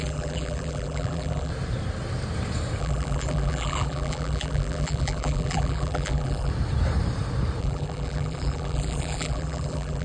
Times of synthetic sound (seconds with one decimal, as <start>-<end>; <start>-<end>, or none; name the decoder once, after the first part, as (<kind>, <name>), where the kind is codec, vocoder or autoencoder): 0.0-1.5 (vocoder, BigVGAN v2); 2.8-6.5; 7.6-10.0